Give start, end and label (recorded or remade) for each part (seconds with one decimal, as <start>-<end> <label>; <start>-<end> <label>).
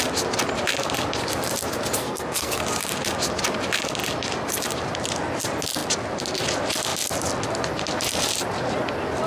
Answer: 0.0-2.0 recorded; 2.0-2.6 remade; 2.6-9.3 recorded